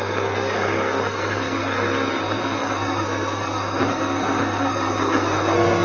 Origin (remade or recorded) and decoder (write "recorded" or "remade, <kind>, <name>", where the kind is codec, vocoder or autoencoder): remade, codec, SNAC